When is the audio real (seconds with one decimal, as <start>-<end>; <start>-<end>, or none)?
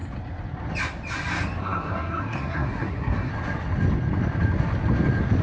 0.0-1.6; 3.3-5.4